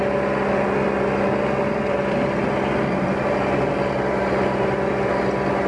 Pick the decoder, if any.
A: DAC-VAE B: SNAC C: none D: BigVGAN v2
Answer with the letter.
C